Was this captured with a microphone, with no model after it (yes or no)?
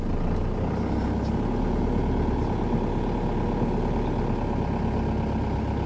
yes